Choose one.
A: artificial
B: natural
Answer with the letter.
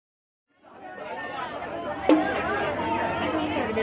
B